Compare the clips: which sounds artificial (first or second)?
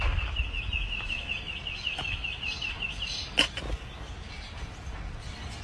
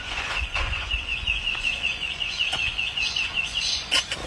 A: second